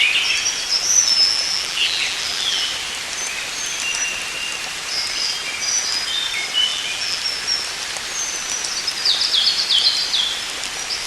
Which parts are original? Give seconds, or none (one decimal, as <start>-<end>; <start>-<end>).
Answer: 0.0-1.0; 2.7-6.7; 7.2-11.1

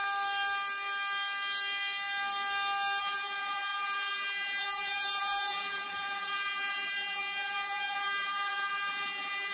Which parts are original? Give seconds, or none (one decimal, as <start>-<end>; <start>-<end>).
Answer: 0.0-3.0

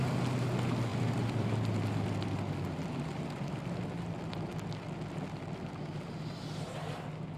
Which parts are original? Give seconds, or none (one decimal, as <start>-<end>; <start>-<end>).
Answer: 0.0-0.9; 1.8-7.4

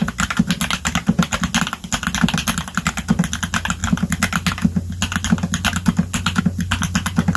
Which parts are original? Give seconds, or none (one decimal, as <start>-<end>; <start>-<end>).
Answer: 0.0-7.4

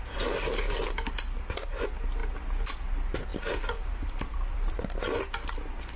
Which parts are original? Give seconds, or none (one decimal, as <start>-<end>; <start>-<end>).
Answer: 0.0-3.3; 4.8-6.0

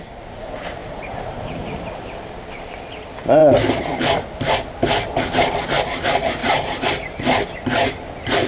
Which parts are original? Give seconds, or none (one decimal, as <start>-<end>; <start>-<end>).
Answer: 0.0-0.8; 2.4-6.4; 7.2-8.5